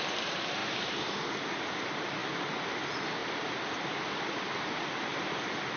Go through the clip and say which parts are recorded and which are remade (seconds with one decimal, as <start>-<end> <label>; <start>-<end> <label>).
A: 0.0-5.8 recorded